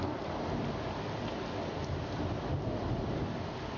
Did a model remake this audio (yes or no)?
no